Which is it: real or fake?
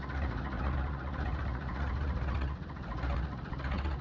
fake